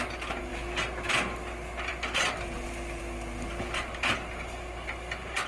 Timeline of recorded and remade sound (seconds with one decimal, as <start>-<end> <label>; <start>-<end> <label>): 0.0-5.5 recorded